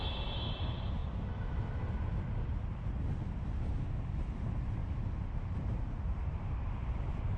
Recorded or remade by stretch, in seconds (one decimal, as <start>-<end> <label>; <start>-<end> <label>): 0.0-1.0 recorded; 1.0-1.6 remade; 1.6-4.8 recorded; 4.8-6.7 remade; 6.7-7.4 recorded